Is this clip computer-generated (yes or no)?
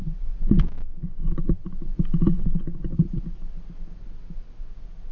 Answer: no